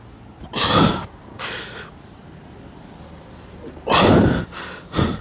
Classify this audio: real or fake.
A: real